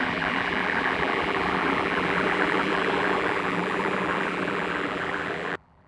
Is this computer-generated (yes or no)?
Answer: yes